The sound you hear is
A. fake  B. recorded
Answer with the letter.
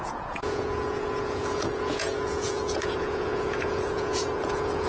A